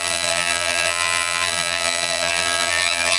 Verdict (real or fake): fake